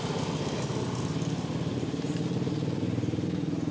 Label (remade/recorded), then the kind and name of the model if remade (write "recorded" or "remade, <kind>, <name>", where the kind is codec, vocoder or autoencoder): recorded